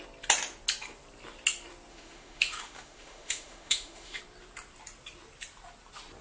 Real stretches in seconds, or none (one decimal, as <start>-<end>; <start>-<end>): 0.0-1.9; 4.2-6.2